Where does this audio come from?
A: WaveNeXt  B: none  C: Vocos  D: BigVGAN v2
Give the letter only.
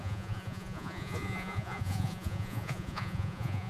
C